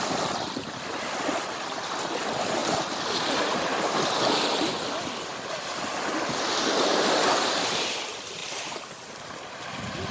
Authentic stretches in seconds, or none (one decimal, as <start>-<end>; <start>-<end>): 0.0-2.6; 3.3-10.1